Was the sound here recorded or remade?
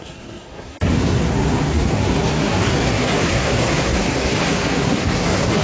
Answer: remade